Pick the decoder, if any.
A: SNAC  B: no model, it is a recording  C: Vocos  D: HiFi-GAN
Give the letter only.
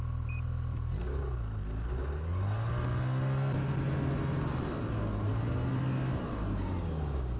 B